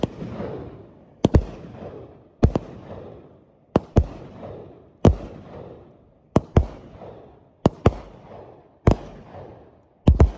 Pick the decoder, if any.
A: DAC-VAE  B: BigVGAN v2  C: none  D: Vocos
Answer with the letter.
C